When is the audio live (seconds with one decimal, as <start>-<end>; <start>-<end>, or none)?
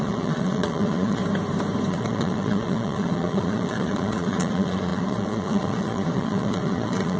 1.2-1.9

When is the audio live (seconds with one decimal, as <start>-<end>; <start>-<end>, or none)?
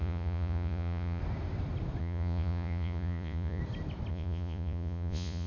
1.2-2.0; 3.6-4.1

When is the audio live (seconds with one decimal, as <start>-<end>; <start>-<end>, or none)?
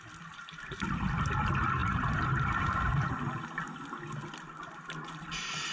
0.0-5.7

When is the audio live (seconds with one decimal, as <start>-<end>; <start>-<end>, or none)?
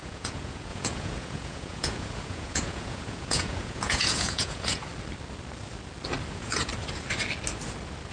4.9-6.3; 6.7-8.1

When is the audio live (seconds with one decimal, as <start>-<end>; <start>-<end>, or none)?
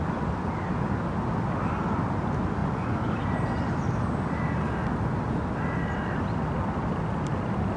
0.0-2.6; 3.1-7.8